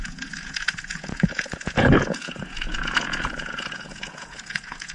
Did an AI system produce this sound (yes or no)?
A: yes